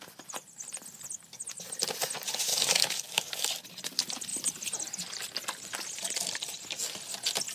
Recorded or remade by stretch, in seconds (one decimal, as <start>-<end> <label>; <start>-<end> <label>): 0.0-2.5 recorded; 2.5-3.5 remade; 3.5-7.5 recorded